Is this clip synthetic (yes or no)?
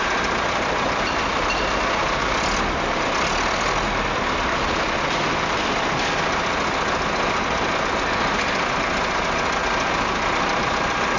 no